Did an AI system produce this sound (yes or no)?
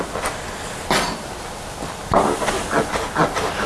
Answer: no